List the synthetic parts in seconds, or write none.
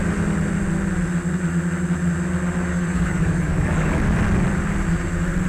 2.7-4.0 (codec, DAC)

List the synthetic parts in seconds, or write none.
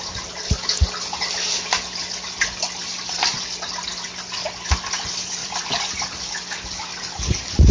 2.8-3.4 (vocoder, BigVGAN v2); 5.4-6.3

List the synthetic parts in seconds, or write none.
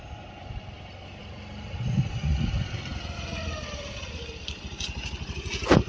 none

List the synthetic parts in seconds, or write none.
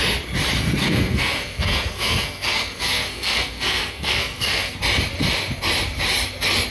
0.8-4.8 (codec, SNAC)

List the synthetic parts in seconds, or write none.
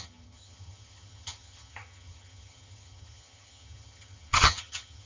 0.0-5.1 (vocoder, HiFi-GAN)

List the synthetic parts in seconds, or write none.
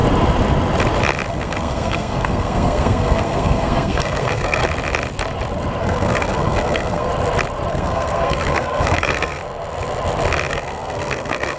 1.3-4.6 (codec, SNAC); 5.8-7.1; 7.7-9.4; 10.5-11.6